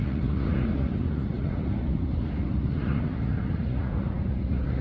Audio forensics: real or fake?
fake